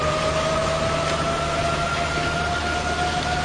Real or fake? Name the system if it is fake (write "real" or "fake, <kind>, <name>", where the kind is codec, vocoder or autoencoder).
real